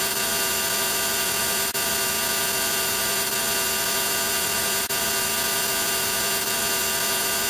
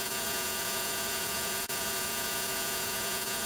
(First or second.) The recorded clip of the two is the first